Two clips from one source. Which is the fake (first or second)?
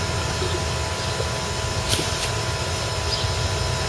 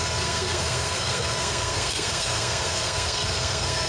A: second